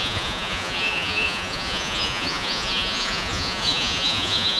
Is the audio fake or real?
fake